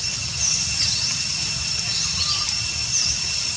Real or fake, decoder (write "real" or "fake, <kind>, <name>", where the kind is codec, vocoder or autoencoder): real